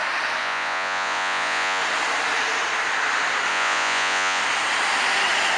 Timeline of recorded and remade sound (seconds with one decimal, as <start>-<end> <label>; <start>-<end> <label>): 0.0-0.4 recorded; 0.4-1.8 remade; 1.8-3.5 recorded; 3.5-4.4 remade; 4.4-5.6 recorded